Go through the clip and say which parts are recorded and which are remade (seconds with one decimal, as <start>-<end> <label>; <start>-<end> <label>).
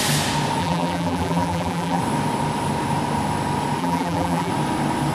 0.0-0.6 recorded; 0.6-2.0 remade; 2.0-3.8 recorded; 3.8-4.5 remade; 4.5-5.1 recorded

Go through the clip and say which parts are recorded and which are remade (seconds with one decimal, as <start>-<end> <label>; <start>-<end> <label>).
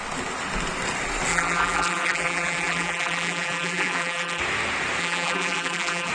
0.0-1.3 recorded; 1.3-4.4 remade; 4.4-5.0 recorded; 5.0-6.1 remade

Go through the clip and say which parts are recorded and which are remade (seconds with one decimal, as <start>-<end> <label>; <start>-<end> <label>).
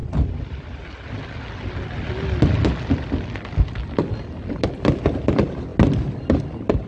0.0-6.9 recorded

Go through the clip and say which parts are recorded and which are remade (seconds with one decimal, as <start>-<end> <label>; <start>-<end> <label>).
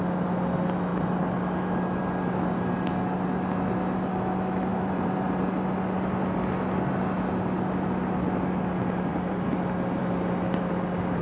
0.0-4.7 recorded; 4.7-5.4 remade; 5.4-9.1 recorded; 9.1-9.6 remade; 9.6-11.2 recorded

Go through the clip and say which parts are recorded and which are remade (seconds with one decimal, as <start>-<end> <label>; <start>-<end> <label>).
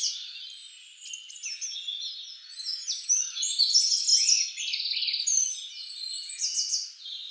0.0-7.3 recorded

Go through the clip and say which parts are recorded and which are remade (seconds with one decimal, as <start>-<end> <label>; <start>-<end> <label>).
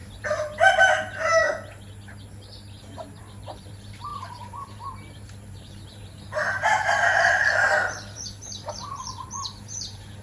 0.0-0.8 recorded; 0.8-1.4 remade; 1.4-3.2 recorded; 3.2-10.2 remade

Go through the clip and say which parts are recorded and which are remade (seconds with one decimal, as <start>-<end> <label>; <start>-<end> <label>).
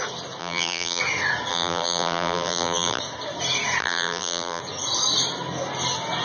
0.0-0.4 recorded; 0.4-1.0 remade; 1.0-1.5 recorded; 1.5-3.0 remade; 3.0-3.8 recorded; 3.8-4.6 remade; 4.6-6.2 recorded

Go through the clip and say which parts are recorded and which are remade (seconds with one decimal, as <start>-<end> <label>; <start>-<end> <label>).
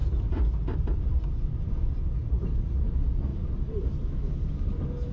0.0-0.7 remade; 0.7-2.2 recorded; 2.2-2.7 remade; 2.7-3.3 recorded; 3.3-3.9 remade; 3.9-5.1 recorded